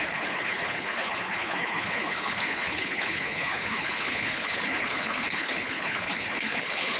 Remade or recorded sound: remade